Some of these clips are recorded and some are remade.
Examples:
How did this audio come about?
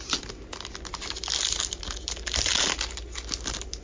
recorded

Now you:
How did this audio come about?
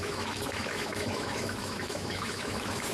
remade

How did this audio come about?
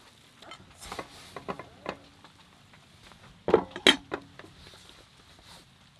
recorded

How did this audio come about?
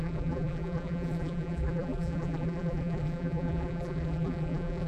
remade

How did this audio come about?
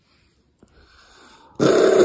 recorded